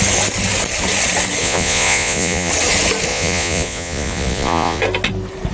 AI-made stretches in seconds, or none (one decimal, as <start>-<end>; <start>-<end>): 1.4-2.5; 3.1-4.8